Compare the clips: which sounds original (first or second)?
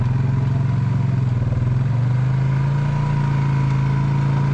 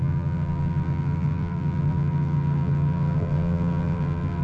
first